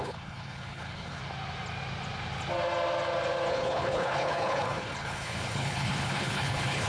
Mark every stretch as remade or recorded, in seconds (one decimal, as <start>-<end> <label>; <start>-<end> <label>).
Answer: 0.0-1.2 remade; 1.2-3.5 recorded; 3.5-6.9 remade